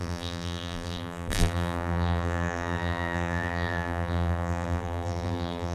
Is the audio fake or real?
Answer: fake